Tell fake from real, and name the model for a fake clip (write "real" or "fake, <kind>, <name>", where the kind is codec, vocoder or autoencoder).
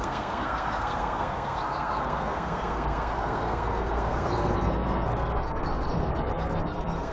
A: fake, codec, SNAC